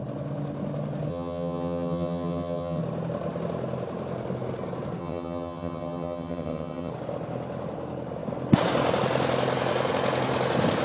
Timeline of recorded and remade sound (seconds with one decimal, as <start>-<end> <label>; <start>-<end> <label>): 0.0-1.1 recorded; 1.1-2.8 remade; 2.8-5.0 recorded; 5.0-6.9 remade; 6.9-10.8 recorded